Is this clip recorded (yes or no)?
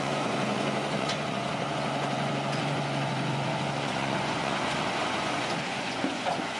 no